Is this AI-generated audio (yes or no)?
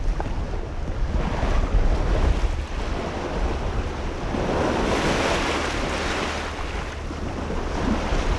no